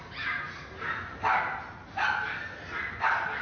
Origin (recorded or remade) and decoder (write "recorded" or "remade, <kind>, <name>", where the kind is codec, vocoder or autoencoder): recorded